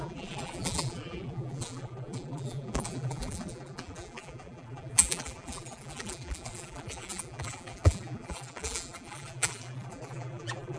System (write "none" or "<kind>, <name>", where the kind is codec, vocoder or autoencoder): vocoder, BigVGAN v2